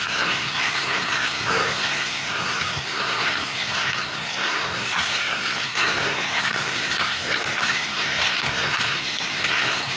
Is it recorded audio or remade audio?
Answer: remade